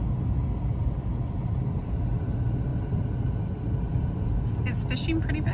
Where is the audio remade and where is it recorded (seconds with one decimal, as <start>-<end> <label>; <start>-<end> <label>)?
0.0-5.5 recorded